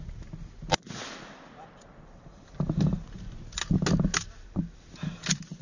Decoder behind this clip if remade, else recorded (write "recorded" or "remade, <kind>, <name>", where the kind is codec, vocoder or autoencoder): recorded